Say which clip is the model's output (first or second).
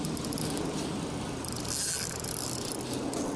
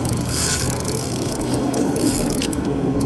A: second